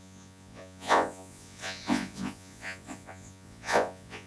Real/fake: fake